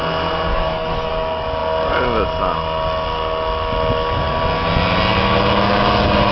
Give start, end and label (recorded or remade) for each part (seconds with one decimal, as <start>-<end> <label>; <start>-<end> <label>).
0.0-0.5 recorded; 0.5-1.1 remade; 1.1-6.3 recorded